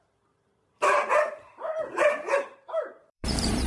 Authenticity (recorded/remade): remade